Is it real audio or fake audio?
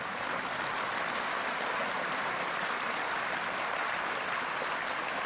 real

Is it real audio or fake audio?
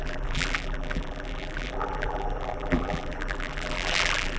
fake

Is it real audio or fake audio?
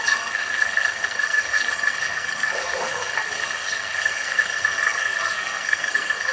fake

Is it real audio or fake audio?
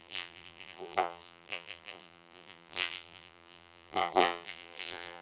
fake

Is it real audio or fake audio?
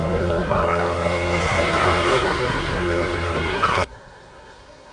fake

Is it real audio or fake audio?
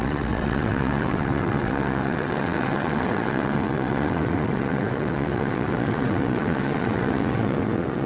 fake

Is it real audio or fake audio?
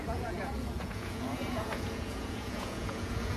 fake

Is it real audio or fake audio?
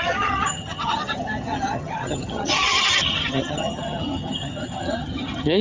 fake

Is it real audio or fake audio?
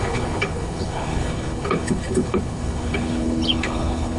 fake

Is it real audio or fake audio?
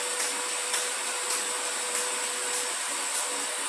fake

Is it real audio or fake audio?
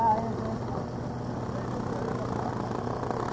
real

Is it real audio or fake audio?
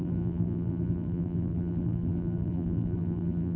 fake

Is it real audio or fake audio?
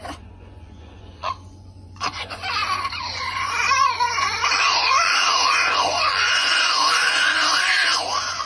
fake